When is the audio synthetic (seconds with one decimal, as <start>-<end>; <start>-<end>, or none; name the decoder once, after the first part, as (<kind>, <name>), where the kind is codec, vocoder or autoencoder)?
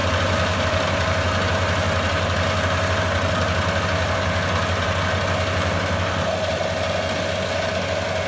none